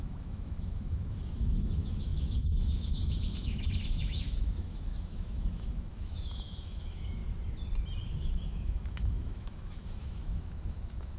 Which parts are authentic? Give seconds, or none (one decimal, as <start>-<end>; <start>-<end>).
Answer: 7.2-8.1